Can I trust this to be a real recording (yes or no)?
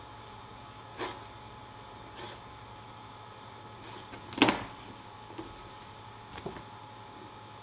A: yes